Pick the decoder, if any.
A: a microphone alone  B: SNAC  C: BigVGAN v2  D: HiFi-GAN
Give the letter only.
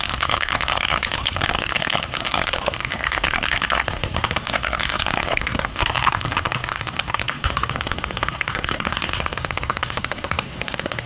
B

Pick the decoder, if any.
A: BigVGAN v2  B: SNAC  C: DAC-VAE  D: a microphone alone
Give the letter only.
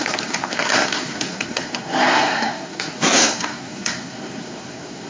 B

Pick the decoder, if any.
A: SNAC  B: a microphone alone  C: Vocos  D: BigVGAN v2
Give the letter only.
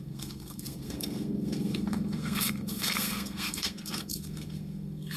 A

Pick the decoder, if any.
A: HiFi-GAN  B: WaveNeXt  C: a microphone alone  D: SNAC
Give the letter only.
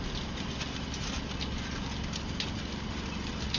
C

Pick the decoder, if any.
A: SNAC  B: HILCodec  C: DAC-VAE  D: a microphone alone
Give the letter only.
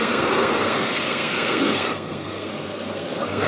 A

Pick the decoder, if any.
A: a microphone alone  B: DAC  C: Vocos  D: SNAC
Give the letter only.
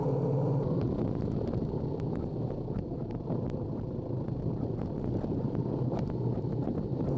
A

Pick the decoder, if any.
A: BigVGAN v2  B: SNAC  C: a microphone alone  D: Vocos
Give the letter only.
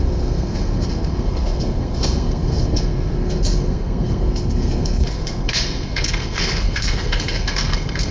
B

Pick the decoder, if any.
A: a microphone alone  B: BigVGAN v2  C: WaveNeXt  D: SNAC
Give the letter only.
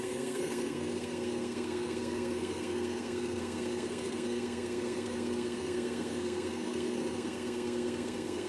D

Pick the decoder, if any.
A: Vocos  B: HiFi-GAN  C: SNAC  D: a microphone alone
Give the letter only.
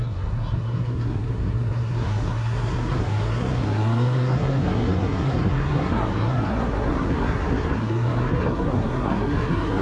C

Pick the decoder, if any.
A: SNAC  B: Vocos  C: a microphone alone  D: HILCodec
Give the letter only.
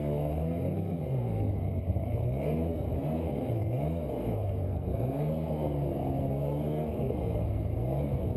A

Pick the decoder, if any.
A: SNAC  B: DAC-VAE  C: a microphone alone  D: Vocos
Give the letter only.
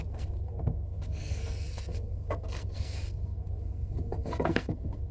A